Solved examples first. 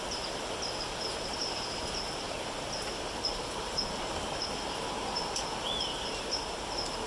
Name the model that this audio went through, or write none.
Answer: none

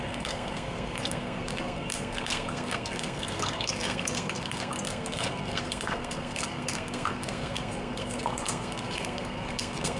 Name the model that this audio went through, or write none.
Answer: codec, SNAC